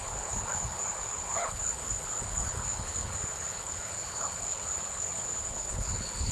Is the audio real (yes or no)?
no